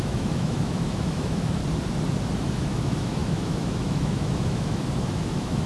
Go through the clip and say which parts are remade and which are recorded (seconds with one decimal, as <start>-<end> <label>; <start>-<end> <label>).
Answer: 0.0-1.6 remade; 1.6-2.5 recorded; 2.5-5.7 remade